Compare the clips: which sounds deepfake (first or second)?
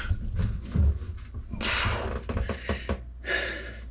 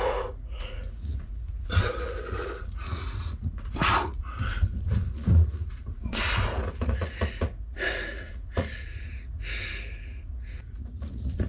second